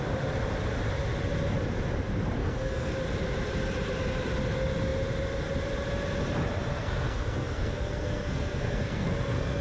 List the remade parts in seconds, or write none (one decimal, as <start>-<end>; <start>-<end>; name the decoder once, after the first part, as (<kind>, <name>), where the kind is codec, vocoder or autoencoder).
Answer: 2.4-2.9 (codec, SNAC); 6.7-9.6